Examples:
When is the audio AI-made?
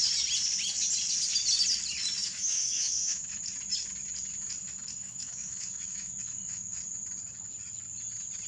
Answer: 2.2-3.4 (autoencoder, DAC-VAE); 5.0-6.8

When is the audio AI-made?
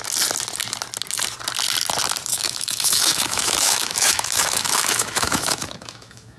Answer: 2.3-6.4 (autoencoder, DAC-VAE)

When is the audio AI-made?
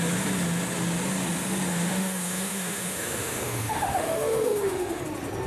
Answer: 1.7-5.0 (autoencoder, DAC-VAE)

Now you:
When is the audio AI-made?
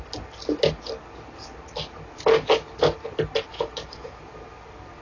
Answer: 3.5-4.2 (autoencoder, DAC-VAE)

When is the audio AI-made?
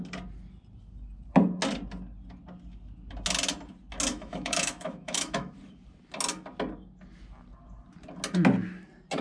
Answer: 4.1-5.5 (autoencoder, DAC-VAE)